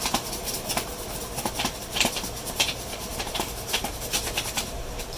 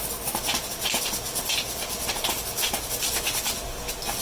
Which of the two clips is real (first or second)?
second